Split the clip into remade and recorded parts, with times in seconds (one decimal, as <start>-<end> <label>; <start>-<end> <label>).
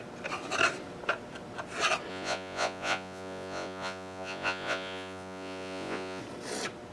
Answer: 0.0-2.1 recorded; 2.1-6.2 remade; 6.2-6.9 recorded